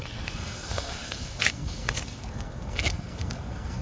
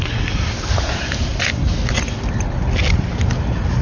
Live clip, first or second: second